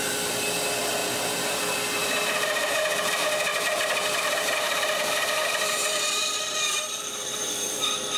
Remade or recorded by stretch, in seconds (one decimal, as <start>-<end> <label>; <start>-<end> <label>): 0.0-1.0 recorded; 1.0-1.6 remade; 1.6-2.0 recorded; 2.0-3.1 remade; 3.1-3.5 recorded; 3.5-8.2 remade